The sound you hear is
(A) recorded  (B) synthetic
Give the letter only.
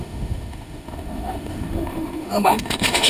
B